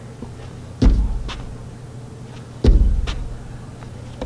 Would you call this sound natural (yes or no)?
yes